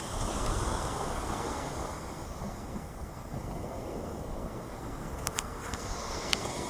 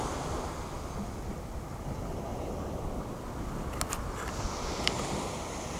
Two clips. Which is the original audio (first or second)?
second